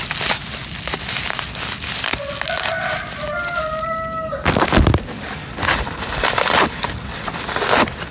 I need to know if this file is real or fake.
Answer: real